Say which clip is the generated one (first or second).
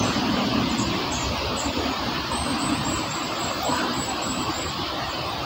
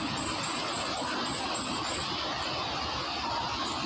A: first